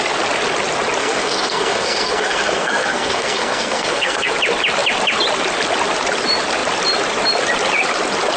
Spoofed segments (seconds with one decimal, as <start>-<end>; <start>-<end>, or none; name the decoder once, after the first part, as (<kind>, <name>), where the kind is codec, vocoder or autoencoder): 1.0-4.3 (codec, SNAC)